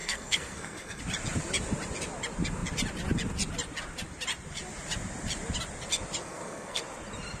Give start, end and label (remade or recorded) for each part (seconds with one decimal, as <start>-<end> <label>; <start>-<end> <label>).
0.0-1.0 remade; 1.0-6.2 recorded; 6.2-6.8 remade; 6.8-7.4 recorded